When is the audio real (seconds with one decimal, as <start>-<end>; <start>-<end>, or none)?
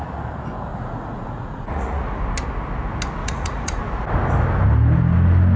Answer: 0.0-0.7; 2.2-3.2; 3.8-5.6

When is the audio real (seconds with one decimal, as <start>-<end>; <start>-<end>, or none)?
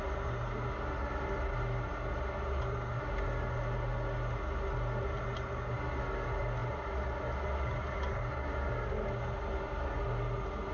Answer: 0.0-10.7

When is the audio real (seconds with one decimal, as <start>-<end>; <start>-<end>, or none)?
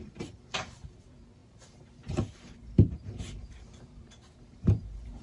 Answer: none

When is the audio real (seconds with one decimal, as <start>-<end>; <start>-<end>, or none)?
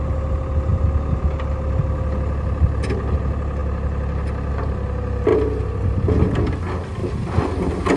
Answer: 0.0-8.0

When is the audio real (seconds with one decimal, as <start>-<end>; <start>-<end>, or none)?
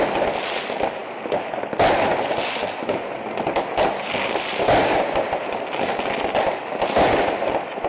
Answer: 0.0-7.9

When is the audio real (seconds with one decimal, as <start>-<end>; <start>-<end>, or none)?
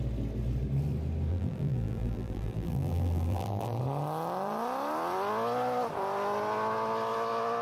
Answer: 0.0-1.3; 3.8-7.6